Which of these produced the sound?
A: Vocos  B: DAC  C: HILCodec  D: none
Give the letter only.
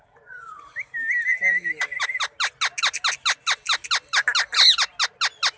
D